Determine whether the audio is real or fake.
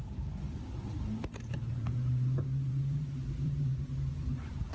fake